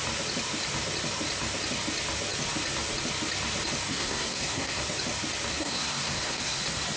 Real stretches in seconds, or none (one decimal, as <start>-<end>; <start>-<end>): 0.0-3.9; 4.8-5.5; 6.6-7.0